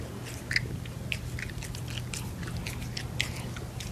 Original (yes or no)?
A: yes